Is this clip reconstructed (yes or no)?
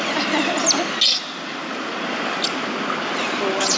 no